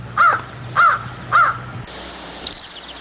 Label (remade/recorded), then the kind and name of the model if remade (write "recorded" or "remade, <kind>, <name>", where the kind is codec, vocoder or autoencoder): recorded